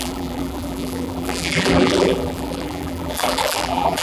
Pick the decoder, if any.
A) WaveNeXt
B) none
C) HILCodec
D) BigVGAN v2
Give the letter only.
D